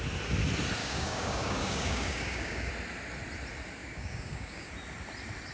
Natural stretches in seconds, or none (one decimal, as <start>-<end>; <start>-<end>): 0.0-0.8; 2.7-3.8; 4.7-5.5